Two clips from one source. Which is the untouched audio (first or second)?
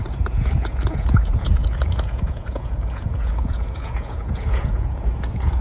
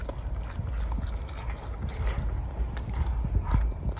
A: second